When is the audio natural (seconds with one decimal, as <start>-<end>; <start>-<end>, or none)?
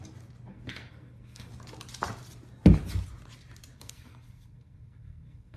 0.0-0.5; 1.5-3.7